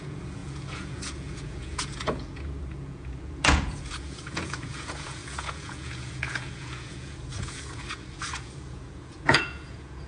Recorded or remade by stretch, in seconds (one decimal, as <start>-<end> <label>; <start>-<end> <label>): 0.0-10.1 remade